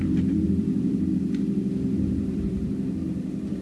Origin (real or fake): fake